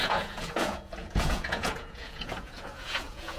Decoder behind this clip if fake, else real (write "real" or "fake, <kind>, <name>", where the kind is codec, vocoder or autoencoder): fake, vocoder, Vocos